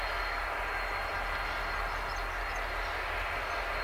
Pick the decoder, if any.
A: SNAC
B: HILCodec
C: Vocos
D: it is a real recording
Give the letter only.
D